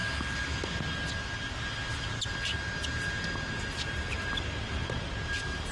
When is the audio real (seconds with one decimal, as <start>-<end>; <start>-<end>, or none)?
0.0-5.7